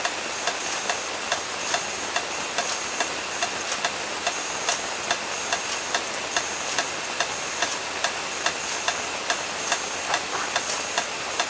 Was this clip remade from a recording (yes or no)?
no